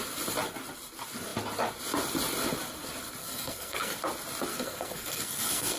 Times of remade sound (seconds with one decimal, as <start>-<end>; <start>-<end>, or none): 3.2-4.0; 4.5-5.8